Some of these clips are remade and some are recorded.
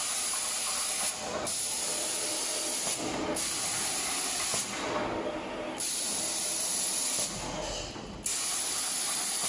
recorded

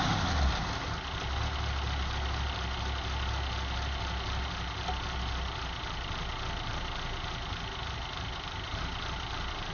recorded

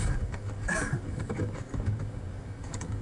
remade